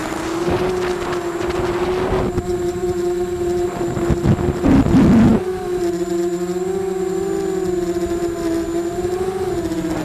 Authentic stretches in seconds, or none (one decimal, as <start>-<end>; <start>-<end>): 0.0-10.0